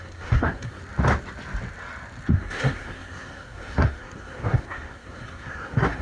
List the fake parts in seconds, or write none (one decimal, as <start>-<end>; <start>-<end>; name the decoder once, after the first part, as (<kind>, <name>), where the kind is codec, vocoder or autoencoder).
0.0-0.8 (codec, SNAC); 2.3-6.0

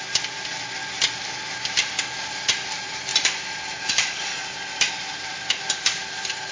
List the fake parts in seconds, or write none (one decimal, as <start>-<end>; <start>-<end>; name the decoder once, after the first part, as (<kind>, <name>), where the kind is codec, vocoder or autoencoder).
0.0-0.8 (vocoder, BigVGAN v2); 2.3-3.1; 3.9-4.3; 4.9-6.5

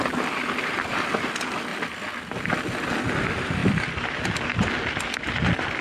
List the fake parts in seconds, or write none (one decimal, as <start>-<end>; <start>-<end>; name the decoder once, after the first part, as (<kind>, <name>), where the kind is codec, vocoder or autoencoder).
3.6-4.2 (vocoder, BigVGAN v2)

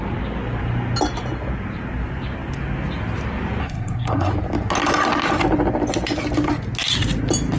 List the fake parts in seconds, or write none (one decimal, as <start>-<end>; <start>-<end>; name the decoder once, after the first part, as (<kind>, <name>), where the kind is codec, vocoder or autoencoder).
3.6-4.3 (codec, SNAC)

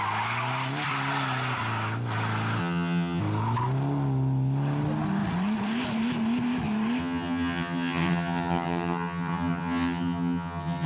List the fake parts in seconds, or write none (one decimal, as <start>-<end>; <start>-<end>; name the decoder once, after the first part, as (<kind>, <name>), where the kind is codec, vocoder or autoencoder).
2.6-3.2 (vocoder, HiFi-GAN); 7.0-10.9

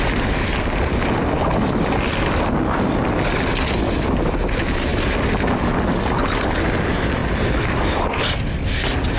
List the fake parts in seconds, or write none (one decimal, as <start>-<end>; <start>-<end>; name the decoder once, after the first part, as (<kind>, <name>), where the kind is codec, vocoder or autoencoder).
none

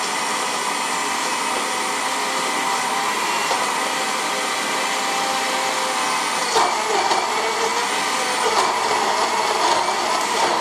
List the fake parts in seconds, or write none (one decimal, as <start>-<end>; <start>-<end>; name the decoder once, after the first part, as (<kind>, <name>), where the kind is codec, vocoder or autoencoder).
none